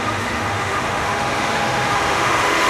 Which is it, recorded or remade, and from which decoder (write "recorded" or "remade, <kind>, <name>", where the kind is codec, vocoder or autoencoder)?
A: remade, autoencoder, DAC-VAE